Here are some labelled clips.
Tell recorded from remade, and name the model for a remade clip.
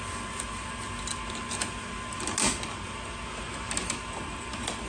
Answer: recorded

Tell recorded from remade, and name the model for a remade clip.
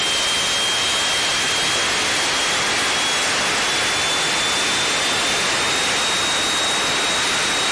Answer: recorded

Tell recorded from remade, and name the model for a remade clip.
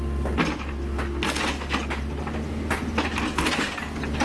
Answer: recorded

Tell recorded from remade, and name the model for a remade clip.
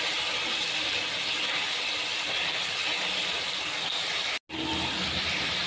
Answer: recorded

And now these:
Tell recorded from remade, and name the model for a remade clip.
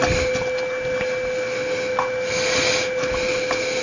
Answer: recorded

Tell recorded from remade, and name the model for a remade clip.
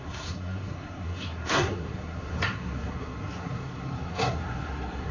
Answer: remade, codec, SNAC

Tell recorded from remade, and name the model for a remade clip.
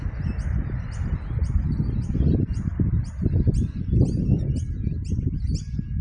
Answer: recorded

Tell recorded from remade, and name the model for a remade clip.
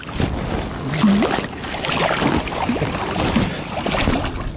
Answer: recorded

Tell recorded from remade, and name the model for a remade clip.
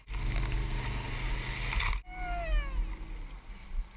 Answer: recorded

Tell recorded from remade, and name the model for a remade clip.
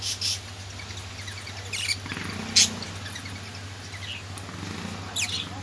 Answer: recorded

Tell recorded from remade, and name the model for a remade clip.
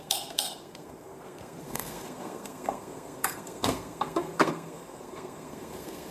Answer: remade, codec, SNAC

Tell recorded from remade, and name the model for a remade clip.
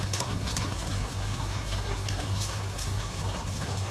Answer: remade, codec, SNAC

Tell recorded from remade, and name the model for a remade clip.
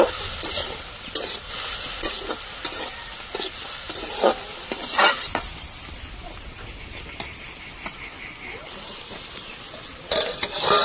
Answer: recorded